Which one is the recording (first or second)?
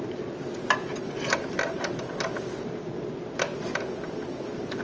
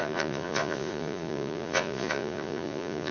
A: first